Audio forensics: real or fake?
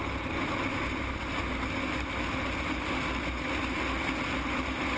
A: real